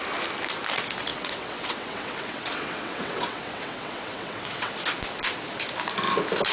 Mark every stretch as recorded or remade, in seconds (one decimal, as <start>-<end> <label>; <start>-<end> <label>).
0.0-1.1 recorded; 1.1-4.7 remade; 4.7-6.5 recorded

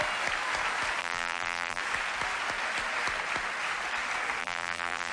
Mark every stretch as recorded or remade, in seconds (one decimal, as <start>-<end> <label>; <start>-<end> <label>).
0.0-1.0 recorded; 1.0-1.8 remade; 1.8-4.4 recorded; 4.4-5.1 remade

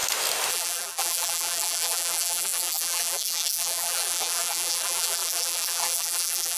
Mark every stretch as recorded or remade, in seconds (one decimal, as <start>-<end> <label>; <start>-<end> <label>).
0.0-0.5 recorded; 0.5-6.6 remade

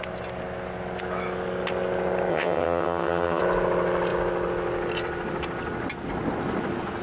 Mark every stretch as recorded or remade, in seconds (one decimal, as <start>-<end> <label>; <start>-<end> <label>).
0.0-2.3 recorded; 2.3-3.4 remade; 3.4-7.0 recorded